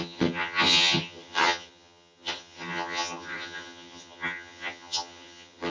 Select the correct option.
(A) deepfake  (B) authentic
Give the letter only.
A